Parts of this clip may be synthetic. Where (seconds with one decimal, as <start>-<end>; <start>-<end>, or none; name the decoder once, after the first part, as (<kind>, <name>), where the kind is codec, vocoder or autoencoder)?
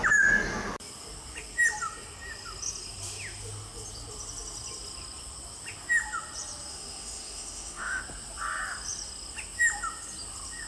6.7-8.0 (autoencoder, DAC-VAE)